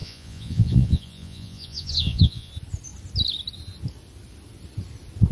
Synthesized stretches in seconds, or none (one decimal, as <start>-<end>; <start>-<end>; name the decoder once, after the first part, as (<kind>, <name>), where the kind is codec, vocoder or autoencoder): 0.0-2.5 (vocoder, Vocos)